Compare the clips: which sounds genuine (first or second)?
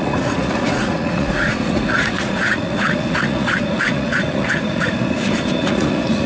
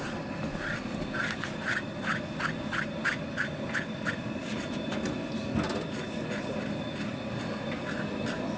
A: second